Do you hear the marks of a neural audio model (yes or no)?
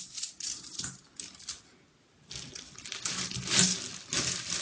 no